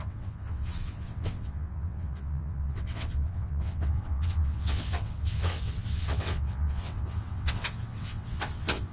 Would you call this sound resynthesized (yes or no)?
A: yes